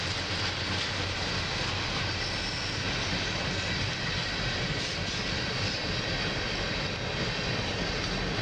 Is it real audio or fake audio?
real